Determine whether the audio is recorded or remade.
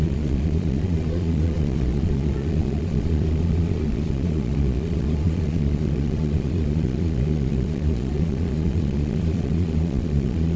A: remade